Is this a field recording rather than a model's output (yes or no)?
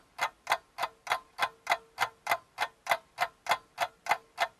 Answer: yes